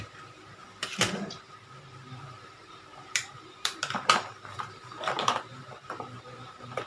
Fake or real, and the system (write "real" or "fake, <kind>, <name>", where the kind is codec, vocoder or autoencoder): fake, vocoder, BigVGAN v2